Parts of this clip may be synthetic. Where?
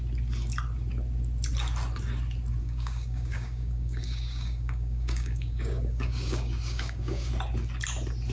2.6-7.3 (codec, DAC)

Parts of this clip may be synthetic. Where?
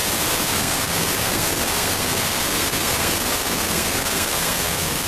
0.0-5.1 (codec, SNAC)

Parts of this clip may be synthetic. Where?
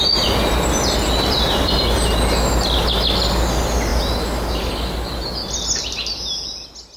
none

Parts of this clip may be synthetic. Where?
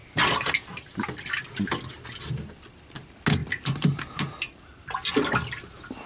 3.4-5.1 (vocoder, BigVGAN v2)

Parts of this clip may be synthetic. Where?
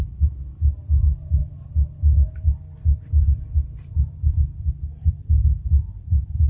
none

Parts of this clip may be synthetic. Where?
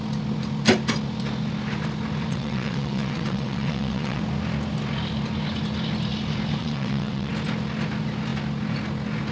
2.3-4.2 (vocoder, WaveNeXt); 6.6-7.3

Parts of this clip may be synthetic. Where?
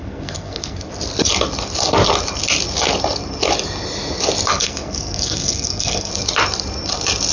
0.0-0.9 (codec, SNAC); 4.5-6.1